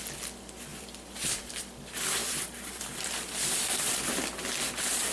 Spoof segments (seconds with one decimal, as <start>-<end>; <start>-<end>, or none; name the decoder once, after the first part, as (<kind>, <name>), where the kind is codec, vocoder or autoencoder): 0.7-1.5 (vocoder, BigVGAN v2); 2.2-4.1